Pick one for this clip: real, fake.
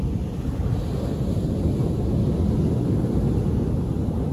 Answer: real